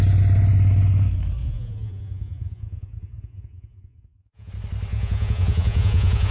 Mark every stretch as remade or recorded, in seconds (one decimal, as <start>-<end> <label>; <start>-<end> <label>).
0.0-1.4 recorded; 1.4-4.5 remade; 4.5-4.9 recorded; 4.9-6.3 remade